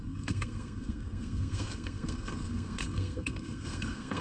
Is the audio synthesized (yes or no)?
yes